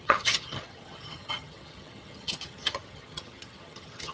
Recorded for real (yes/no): no